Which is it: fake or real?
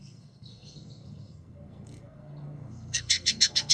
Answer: fake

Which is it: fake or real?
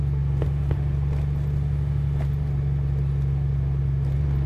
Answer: real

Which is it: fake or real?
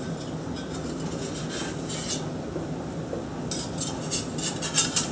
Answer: real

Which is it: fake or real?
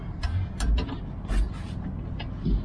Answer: real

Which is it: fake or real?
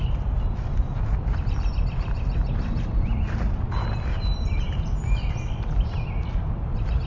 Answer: fake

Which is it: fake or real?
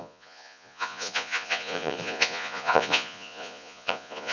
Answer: fake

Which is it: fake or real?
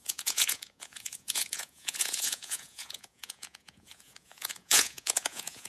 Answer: fake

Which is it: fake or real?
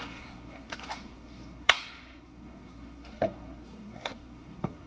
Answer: fake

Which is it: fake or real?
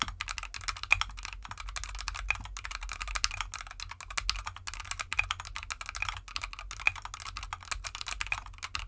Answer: real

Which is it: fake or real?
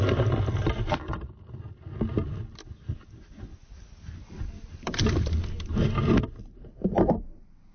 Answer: real